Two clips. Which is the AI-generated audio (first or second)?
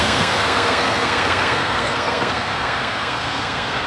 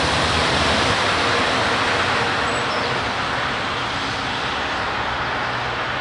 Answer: first